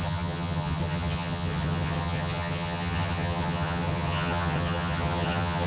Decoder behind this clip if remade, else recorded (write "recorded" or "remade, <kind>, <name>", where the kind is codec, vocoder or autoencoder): remade, vocoder, HiFi-GAN